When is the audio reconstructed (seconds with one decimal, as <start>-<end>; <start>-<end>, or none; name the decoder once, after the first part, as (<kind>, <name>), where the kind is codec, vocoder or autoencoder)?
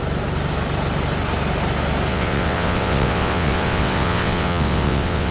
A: 2.1-5.3 (vocoder, WaveNeXt)